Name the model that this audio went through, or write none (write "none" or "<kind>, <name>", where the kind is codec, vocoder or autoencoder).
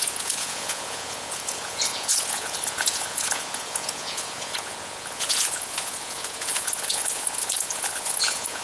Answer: vocoder, Vocos